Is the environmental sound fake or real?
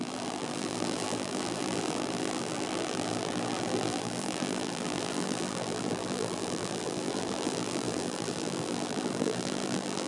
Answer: fake